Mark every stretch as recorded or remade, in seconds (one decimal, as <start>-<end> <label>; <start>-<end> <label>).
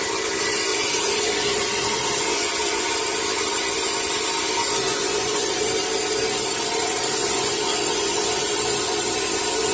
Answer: 0.0-0.7 recorded; 0.7-2.8 remade; 2.8-4.9 recorded; 4.9-5.7 remade; 5.7-7.2 recorded; 7.2-9.1 remade; 9.1-9.7 recorded